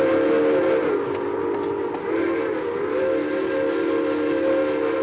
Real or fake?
real